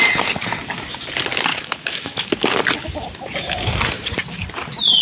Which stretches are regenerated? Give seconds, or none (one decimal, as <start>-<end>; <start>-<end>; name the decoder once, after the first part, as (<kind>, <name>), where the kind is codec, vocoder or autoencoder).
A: 1.5-2.3 (autoencoder, DAC-VAE)